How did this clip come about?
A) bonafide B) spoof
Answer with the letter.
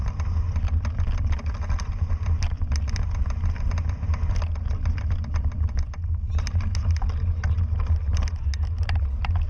A